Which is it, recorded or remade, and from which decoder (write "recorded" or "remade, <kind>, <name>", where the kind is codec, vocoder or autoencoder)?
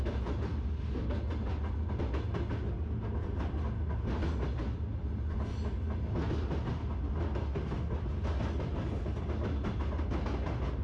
recorded